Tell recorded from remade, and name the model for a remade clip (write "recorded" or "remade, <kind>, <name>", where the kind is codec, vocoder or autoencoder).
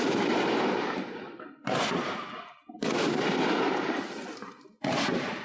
remade, vocoder, BigVGAN v2